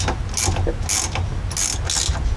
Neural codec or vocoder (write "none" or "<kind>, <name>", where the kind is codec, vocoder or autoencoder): none